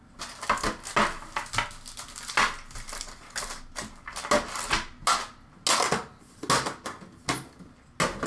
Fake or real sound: real